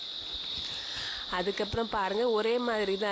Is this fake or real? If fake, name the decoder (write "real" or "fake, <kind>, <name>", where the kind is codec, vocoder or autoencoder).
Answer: real